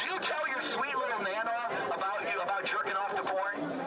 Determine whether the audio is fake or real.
fake